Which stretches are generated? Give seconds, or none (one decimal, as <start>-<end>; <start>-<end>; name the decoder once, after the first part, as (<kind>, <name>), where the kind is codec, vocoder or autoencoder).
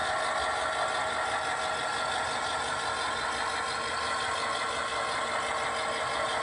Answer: none